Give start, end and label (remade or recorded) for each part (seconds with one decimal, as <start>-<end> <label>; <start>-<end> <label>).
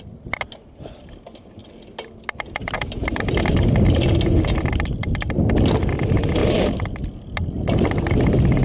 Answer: 0.0-8.6 recorded